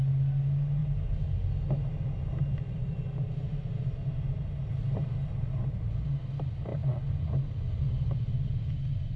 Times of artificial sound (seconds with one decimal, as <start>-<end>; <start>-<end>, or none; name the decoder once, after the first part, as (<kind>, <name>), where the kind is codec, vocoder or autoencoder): 0.8-1.7 (vocoder, BigVGAN v2); 2.8-6.1